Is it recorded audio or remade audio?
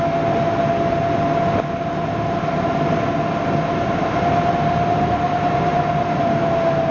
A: recorded